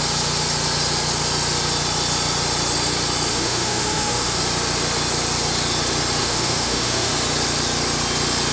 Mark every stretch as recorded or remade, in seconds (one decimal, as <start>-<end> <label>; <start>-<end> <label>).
0.0-3.3 recorded; 3.3-4.4 remade; 4.4-6.2 recorded; 6.2-7.1 remade; 7.1-8.5 recorded